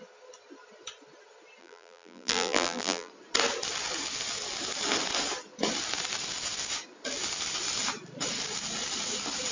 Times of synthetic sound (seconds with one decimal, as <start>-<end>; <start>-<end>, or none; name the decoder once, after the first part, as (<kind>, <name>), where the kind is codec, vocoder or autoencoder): 1.6-3.1 (vocoder, BigVGAN v2)

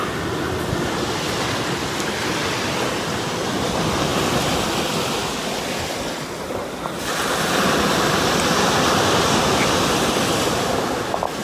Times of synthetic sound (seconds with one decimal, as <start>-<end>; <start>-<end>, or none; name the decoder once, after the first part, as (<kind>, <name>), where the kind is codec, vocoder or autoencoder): none

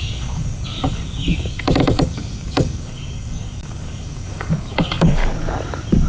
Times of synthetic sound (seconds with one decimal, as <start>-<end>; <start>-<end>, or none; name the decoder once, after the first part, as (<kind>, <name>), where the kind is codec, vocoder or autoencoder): 0.0-5.2 (codec, DAC)

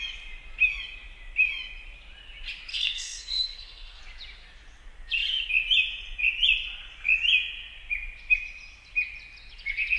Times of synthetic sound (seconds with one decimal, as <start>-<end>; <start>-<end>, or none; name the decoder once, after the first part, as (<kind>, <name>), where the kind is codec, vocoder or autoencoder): 2.7-4.0 (codec, SNAC)

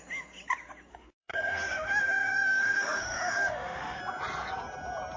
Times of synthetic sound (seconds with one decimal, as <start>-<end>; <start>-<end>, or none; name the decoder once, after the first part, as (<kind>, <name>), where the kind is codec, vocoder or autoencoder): 0.9-4.0 (autoencoder, DAC-VAE)

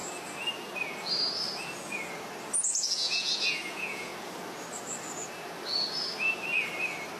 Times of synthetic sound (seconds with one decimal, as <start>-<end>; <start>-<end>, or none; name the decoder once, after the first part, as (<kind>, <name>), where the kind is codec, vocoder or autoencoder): 2.6-4.1 (vocoder, Vocos)

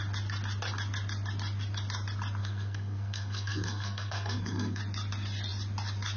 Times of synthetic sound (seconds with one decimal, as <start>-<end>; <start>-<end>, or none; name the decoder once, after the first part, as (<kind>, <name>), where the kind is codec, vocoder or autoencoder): 2.4-4.8 (codec, SNAC)